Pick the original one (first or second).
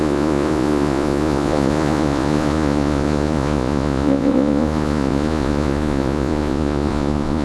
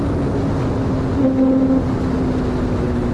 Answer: second